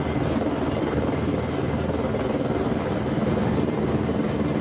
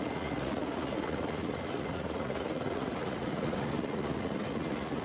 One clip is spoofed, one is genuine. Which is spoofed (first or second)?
second